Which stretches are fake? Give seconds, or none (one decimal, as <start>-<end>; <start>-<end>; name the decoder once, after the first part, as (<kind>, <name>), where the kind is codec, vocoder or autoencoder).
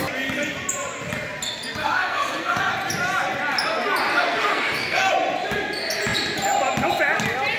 1.8-2.7 (codec, SNAC); 4.1-5.1